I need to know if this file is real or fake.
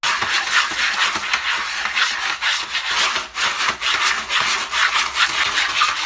real